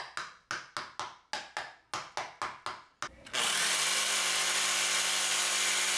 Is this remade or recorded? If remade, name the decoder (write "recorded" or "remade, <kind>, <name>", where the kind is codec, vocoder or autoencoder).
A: recorded